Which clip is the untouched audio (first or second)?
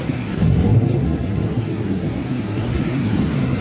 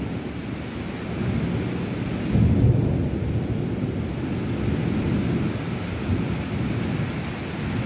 second